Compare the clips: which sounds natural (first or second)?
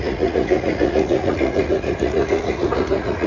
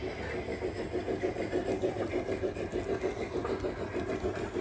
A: second